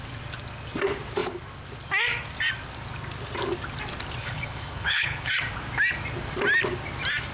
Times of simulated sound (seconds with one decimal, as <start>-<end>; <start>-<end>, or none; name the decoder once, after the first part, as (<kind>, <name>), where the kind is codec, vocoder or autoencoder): 4.2-5.3 (codec, HILCodec)